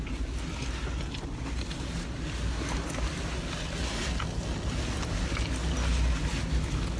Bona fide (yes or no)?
yes